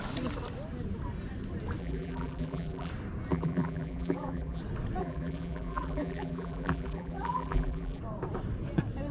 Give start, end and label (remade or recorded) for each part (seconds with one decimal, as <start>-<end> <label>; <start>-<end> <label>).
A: 0.0-1.8 recorded; 1.8-2.9 remade; 2.9-3.3 recorded; 3.3-4.6 remade; 4.6-5.0 recorded; 5.0-8.0 remade; 8.0-9.1 recorded